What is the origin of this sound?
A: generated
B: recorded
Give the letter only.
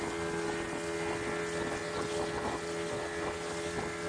B